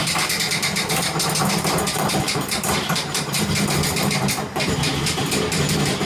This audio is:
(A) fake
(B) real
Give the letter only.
A